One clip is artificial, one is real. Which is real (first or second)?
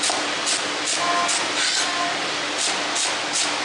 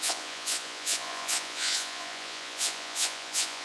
first